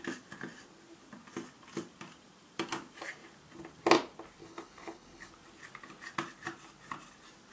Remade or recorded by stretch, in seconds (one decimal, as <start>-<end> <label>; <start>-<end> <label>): 0.0-4.4 recorded; 4.4-5.3 remade; 5.3-7.5 recorded